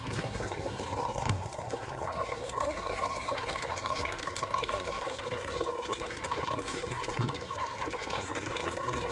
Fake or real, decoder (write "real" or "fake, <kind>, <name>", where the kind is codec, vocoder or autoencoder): fake, codec, SNAC